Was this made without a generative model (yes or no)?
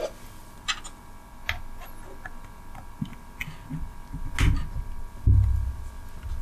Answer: yes